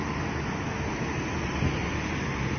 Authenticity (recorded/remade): recorded